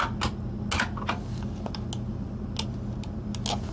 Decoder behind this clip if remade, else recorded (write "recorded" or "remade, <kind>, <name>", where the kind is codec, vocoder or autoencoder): recorded